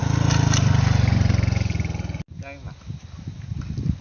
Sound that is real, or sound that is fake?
real